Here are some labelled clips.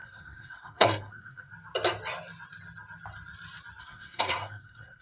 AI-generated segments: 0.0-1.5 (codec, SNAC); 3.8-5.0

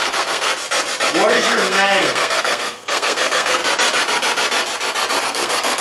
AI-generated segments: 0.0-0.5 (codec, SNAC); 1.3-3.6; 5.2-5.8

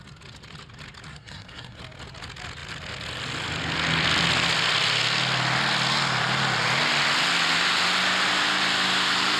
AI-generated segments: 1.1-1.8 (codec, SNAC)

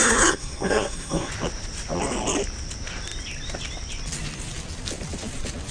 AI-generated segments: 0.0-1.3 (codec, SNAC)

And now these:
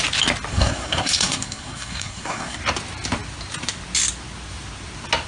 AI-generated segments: 0.5-2.6 (codec, SNAC)